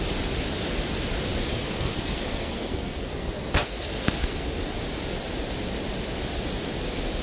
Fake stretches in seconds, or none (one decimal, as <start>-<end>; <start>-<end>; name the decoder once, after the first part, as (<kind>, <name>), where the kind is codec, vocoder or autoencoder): 1.5-4.5 (codec, SNAC)